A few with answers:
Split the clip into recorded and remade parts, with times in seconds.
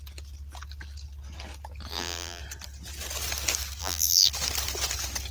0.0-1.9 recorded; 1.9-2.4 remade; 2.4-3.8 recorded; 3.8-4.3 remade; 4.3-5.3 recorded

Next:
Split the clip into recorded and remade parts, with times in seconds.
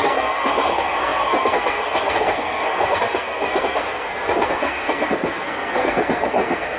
0.0-6.8 remade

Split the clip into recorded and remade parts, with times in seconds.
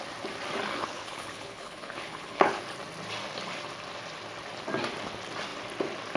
0.0-0.7 recorded; 0.7-2.6 remade; 2.6-6.2 recorded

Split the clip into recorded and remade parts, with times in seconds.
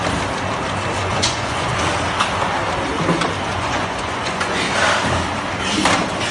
0.0-1.0 recorded; 1.0-1.8 remade; 1.8-3.5 recorded; 3.5-4.6 remade; 4.6-6.3 recorded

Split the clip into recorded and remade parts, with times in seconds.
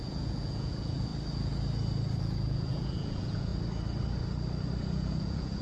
0.0-1.1 remade; 1.1-2.2 recorded; 2.2-3.5 remade; 3.5-4.8 recorded; 4.8-5.6 remade